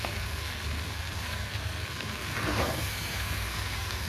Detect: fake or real fake